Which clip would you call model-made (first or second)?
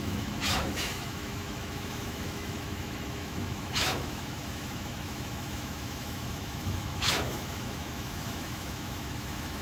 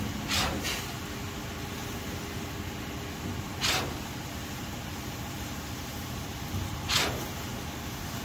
first